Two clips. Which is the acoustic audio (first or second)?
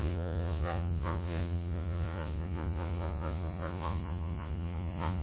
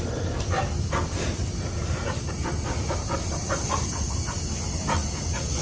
second